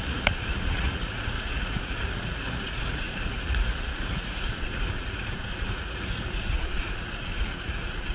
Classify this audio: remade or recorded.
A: remade